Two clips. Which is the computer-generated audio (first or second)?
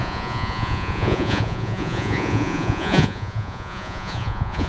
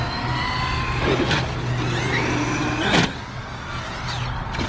first